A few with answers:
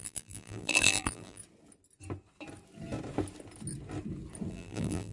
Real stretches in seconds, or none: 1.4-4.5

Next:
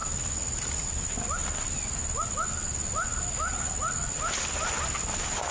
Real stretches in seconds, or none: 0.0-5.5

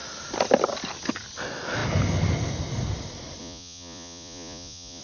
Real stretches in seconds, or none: 0.0-3.4

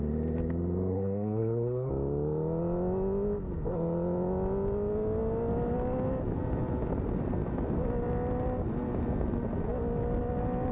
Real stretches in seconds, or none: 0.0-0.9; 1.9-10.7